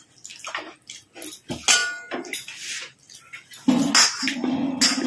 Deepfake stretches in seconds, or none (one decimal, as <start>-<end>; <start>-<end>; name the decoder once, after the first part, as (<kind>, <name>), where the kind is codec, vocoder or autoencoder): none